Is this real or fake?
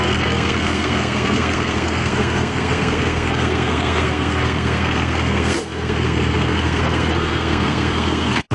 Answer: fake